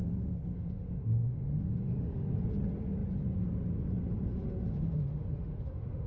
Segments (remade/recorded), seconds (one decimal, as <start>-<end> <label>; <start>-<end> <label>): 0.0-2.3 remade; 2.3-4.3 recorded; 4.3-6.1 remade